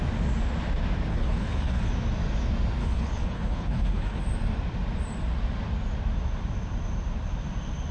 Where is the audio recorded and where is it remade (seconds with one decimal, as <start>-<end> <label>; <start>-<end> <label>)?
0.0-1.1 recorded; 1.1-1.9 remade; 1.9-2.8 recorded; 2.8-4.2 remade; 4.2-7.9 recorded